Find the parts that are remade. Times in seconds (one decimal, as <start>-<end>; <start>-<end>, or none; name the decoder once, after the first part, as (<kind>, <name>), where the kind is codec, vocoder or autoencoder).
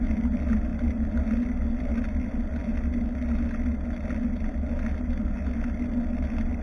none